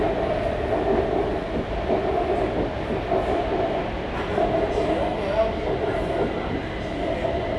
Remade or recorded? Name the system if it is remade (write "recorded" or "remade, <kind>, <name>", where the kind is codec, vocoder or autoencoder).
recorded